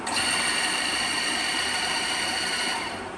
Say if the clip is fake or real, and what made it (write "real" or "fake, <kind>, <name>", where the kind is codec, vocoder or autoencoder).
fake, vocoder, BigVGAN v2